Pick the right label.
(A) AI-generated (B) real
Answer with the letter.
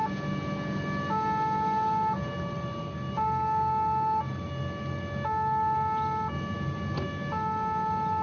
B